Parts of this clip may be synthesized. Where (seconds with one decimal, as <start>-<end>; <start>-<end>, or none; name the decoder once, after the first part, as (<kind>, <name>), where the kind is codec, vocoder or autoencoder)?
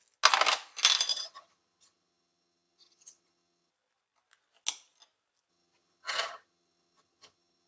1.1-3.7 (vocoder, HiFi-GAN); 5.5-7.7